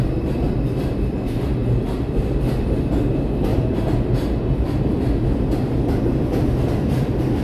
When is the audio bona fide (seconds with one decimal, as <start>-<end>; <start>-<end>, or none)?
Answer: 0.0-3.5; 4.8-7.4